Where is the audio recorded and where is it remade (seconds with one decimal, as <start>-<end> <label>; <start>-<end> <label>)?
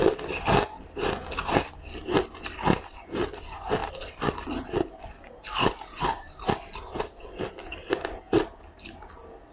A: 0.0-9.5 recorded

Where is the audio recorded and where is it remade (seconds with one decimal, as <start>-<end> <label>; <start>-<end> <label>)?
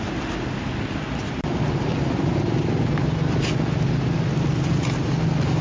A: 0.0-5.6 recorded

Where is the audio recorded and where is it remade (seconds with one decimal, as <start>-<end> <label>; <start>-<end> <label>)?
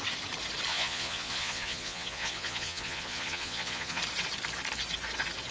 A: 0.0-0.7 recorded; 0.7-4.0 remade; 4.0-5.5 recorded